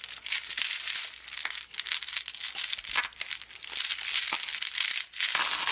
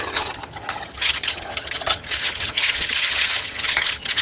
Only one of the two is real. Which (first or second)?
first